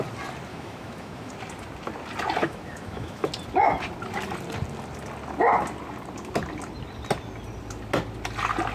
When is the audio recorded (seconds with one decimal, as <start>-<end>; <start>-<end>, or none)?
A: 0.0-0.5; 1.3-2.4; 3.3-8.7